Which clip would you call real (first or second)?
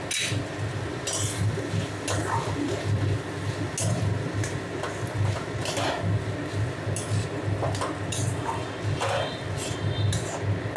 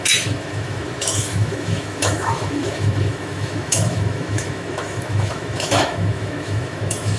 first